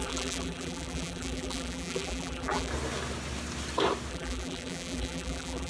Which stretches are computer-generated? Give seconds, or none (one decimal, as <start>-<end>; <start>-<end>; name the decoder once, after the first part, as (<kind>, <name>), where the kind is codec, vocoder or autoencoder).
0.0-2.7 (vocoder, BigVGAN v2); 4.1-5.7

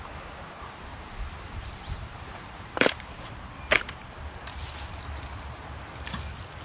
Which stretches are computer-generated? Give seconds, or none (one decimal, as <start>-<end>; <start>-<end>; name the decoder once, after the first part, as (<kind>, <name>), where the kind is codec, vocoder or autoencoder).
0.9-3.6 (vocoder, BigVGAN v2)

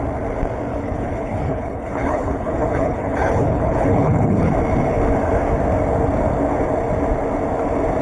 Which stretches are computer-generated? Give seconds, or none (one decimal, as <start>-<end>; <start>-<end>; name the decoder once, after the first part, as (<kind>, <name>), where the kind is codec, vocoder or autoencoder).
0.7-4.5 (codec, HILCodec)

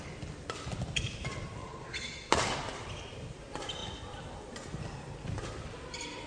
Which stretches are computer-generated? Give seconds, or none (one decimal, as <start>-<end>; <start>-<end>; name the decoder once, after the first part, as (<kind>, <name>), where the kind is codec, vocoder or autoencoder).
1.6-2.3 (vocoder, Vocos)

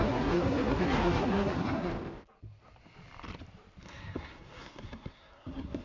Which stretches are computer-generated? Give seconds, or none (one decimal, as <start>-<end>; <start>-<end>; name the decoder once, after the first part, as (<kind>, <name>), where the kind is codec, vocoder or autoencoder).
0.0-1.9 (codec, SNAC); 3.8-5.8

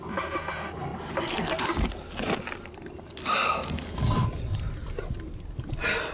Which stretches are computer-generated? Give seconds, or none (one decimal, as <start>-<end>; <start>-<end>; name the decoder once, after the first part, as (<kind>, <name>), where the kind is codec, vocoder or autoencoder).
none

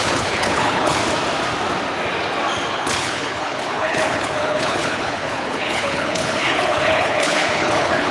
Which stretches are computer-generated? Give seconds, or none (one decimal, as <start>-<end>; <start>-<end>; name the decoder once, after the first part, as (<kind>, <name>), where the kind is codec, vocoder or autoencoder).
0.0-1.0 (codec, HILCodec); 2.7-8.1